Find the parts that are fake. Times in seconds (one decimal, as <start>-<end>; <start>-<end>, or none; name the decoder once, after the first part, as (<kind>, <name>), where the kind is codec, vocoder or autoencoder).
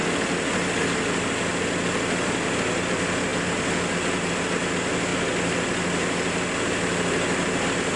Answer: 0.0-0.7 (vocoder, BigVGAN v2)